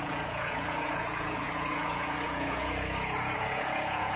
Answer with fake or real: fake